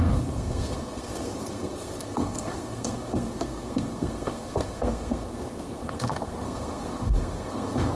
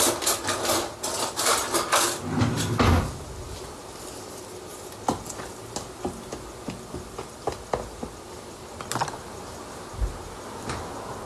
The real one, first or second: second